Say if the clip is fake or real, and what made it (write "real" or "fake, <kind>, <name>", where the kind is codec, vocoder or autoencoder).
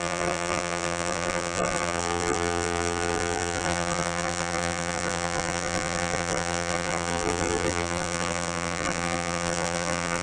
fake, vocoder, BigVGAN v2